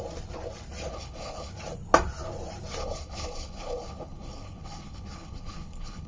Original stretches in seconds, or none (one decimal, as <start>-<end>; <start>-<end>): 0.0-0.9; 1.5-2.8